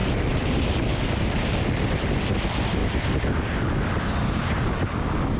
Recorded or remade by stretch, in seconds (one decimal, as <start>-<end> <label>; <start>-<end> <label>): 0.0-5.4 recorded